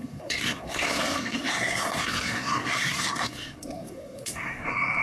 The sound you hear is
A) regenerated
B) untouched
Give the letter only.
A